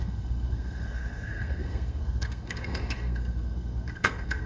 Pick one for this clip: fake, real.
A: fake